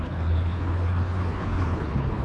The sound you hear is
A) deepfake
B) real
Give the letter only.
A